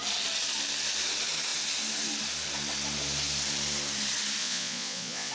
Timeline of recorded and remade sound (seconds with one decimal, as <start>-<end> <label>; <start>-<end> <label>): 0.0-4.4 recorded; 4.4-5.3 remade